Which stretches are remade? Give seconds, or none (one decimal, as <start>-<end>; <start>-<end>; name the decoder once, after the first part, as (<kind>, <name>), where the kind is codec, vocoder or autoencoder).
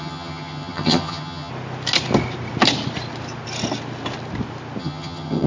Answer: 0.0-1.5 (vocoder, HiFi-GAN); 4.8-5.5